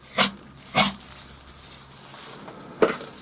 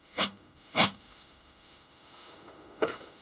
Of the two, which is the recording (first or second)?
first